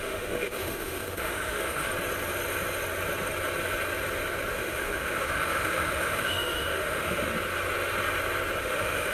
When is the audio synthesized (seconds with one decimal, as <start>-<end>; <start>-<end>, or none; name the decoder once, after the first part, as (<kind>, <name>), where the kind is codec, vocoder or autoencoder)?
0.0-1.9 (autoencoder, DAC-VAE); 4.5-7.3; 8.6-9.1